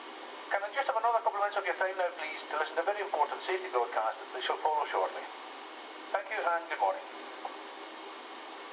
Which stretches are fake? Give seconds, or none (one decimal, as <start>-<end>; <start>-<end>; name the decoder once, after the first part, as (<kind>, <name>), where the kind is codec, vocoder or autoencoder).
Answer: none

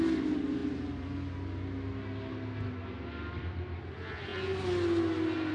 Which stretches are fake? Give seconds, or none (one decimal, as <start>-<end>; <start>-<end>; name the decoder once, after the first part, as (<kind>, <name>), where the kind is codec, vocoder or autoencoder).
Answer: none

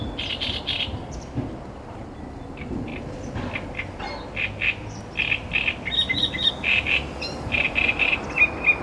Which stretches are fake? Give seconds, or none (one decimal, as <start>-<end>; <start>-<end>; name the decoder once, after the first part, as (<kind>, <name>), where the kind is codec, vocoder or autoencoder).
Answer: none

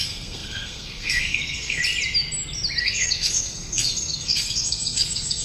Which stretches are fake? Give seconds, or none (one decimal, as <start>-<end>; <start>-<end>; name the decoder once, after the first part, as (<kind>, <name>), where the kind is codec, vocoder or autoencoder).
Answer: 0.0-1.8 (codec, SNAC); 2.8-5.4

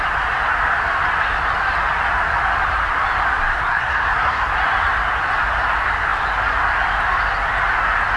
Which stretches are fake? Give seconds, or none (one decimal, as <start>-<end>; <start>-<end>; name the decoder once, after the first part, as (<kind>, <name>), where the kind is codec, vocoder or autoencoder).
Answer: 3.5-4.5 (codec, SNAC)